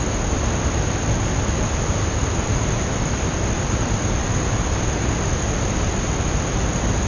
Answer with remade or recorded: recorded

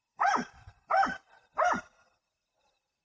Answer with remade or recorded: recorded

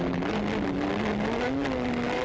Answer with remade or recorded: recorded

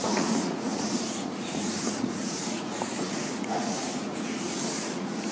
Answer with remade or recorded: remade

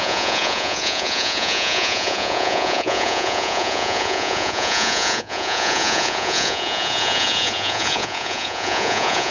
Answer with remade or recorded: remade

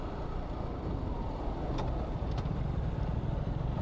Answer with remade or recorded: recorded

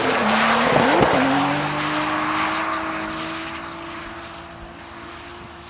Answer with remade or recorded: recorded